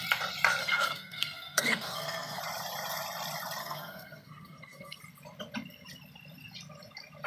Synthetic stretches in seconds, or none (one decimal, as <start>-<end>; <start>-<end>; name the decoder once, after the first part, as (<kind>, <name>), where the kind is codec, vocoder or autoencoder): 0.6-2.4 (codec, SNAC); 3.6-5.0